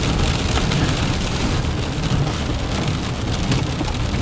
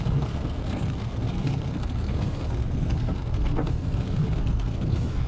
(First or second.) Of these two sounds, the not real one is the second